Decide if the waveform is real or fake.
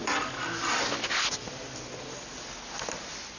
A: real